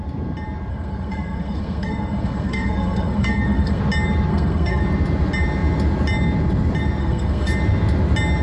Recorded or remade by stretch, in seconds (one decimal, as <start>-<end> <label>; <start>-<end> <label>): 0.0-0.7 recorded; 0.7-3.8 remade; 3.8-4.3 recorded; 4.3-4.8 remade; 4.8-7.0 recorded; 7.0-7.5 remade; 7.5-8.4 recorded